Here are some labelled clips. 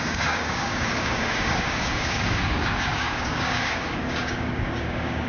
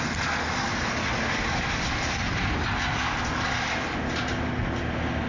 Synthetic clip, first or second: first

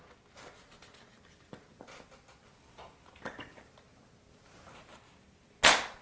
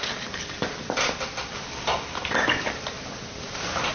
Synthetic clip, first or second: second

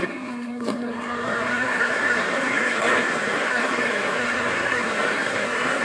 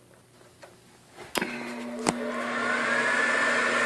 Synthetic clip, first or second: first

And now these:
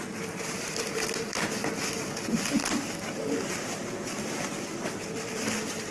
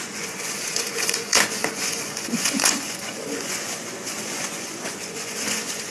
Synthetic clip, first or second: second